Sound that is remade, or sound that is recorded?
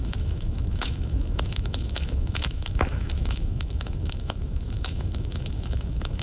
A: remade